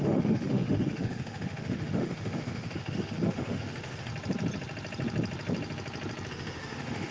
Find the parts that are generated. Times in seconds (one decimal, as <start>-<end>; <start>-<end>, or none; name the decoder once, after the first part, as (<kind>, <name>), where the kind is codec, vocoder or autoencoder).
0.0-4.1 (autoencoder, DAC-VAE); 6.3-7.1